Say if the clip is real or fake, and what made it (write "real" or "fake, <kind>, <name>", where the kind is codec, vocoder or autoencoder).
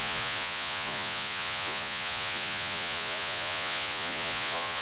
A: fake, vocoder, Vocos